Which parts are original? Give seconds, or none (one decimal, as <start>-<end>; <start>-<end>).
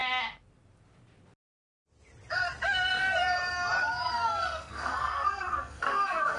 0.0-3.8